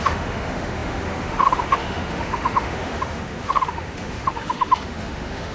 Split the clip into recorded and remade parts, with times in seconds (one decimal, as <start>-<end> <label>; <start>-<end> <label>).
0.0-5.5 remade